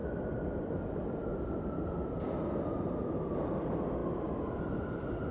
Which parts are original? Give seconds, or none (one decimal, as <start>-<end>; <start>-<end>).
0.0-1.3; 1.9-5.3